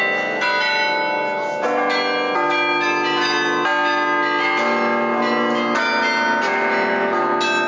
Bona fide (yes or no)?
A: yes